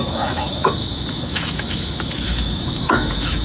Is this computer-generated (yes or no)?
yes